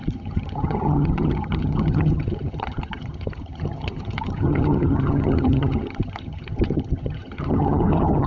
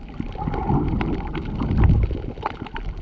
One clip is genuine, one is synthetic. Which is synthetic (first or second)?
first